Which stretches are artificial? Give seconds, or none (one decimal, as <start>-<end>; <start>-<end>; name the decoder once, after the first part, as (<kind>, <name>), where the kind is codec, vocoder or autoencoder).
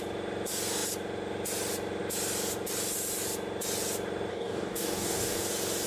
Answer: 4.3-5.4 (codec, DAC)